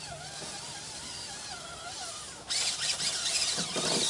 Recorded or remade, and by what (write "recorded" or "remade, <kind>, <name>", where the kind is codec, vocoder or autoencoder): recorded